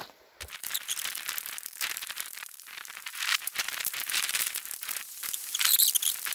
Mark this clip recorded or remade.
remade